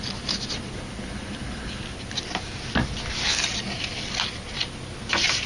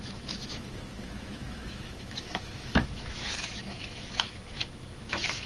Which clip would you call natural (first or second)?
first